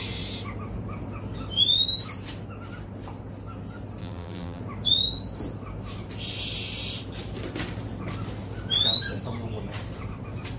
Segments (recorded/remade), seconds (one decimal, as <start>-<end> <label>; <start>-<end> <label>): 0.0-4.0 recorded; 4.0-4.6 remade; 4.6-10.6 recorded